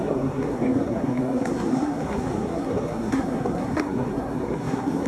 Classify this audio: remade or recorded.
remade